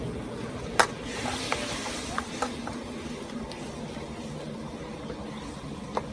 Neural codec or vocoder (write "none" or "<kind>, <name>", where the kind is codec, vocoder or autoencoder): none